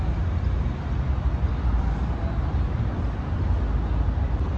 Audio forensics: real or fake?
real